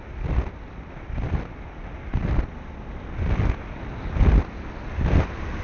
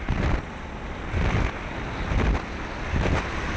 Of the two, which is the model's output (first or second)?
second